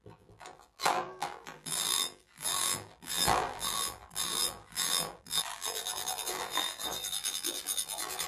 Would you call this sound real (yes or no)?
no